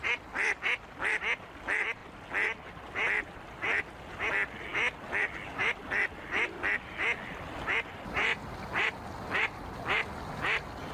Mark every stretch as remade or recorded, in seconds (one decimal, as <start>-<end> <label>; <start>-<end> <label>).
0.0-10.9 recorded